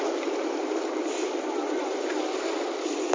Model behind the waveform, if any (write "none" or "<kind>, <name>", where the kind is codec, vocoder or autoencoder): none